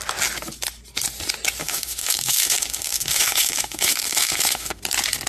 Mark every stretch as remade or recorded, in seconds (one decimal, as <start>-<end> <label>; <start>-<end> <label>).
0.0-1.6 recorded; 1.6-4.8 remade; 4.8-5.3 recorded